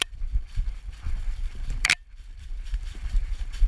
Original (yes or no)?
no